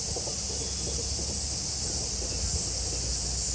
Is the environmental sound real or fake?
real